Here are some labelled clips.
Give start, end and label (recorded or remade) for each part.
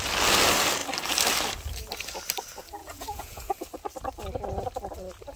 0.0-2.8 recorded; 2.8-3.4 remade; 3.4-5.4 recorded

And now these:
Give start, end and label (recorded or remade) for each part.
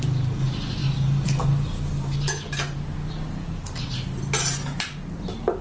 0.0-5.6 recorded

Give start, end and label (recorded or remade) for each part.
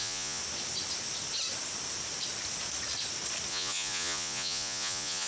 0.0-0.4 remade; 0.4-3.5 recorded; 3.5-5.3 remade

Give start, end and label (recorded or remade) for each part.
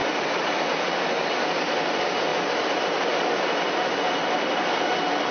0.0-5.3 recorded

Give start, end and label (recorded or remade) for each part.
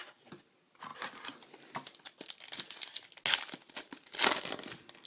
0.0-5.1 recorded